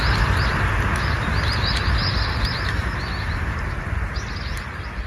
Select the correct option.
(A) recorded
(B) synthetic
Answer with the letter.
A